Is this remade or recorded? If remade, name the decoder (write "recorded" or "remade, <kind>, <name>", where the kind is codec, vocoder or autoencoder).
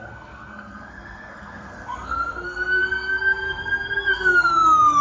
remade, codec, SNAC